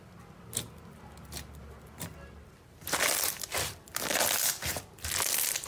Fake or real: real